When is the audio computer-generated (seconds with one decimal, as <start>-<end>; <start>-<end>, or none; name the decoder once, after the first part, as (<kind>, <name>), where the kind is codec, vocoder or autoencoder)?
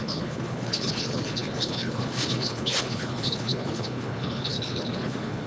0.0-5.5 (codec, HILCodec)